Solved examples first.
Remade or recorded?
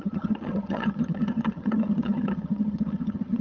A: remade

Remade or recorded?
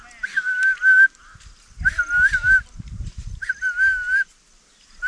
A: recorded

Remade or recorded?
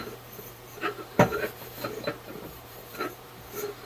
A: remade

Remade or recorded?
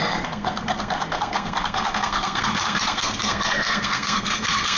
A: remade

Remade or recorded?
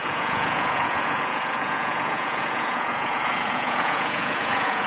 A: remade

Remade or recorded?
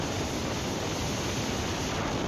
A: recorded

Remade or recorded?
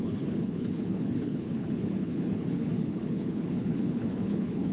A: remade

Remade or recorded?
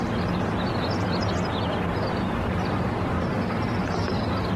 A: recorded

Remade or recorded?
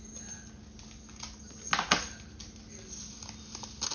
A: recorded